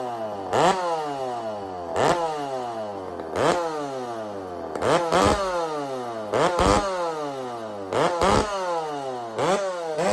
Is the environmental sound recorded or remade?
recorded